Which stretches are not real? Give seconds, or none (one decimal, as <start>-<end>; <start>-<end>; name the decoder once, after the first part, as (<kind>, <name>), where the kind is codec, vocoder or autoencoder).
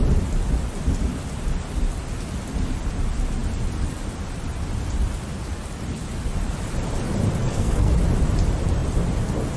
7.4-7.9 (codec, SNAC)